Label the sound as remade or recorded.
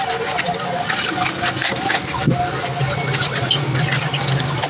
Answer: recorded